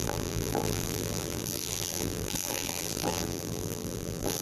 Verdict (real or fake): fake